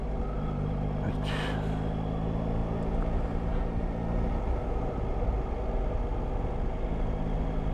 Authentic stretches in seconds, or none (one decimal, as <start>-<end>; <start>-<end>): 0.0-7.7